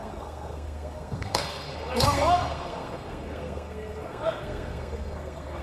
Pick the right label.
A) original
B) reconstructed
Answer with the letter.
B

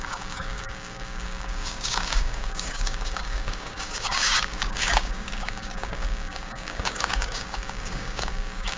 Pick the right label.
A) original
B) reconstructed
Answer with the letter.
B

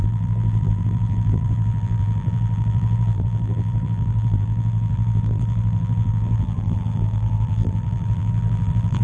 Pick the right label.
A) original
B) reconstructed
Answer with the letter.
B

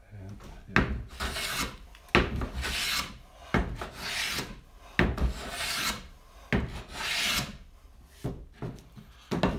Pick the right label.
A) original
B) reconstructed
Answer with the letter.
A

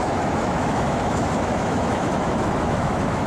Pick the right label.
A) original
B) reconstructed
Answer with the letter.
B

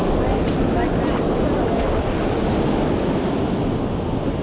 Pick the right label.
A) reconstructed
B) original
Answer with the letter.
B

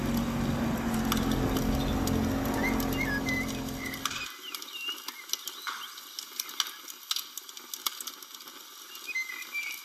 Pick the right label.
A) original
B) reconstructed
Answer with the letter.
A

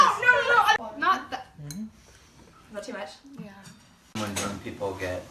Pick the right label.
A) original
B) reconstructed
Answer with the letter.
A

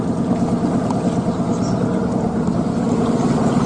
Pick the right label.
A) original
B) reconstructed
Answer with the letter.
A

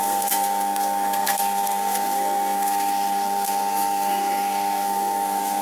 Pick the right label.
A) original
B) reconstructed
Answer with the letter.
B